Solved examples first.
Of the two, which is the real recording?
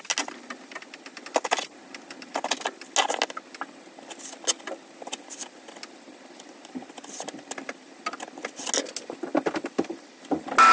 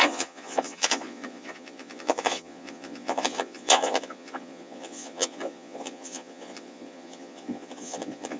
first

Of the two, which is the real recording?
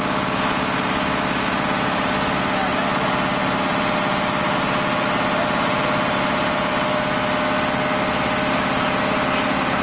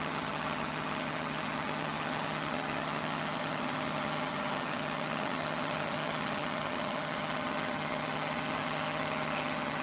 first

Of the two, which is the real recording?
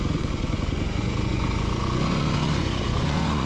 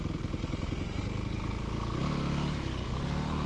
second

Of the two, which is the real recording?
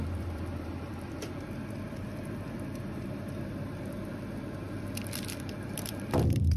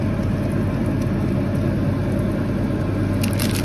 second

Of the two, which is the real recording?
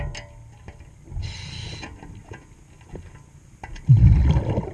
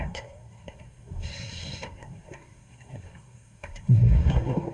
first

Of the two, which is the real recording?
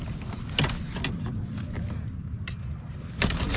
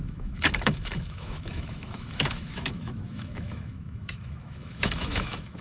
first